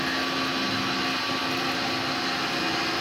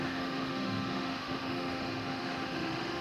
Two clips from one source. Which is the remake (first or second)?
second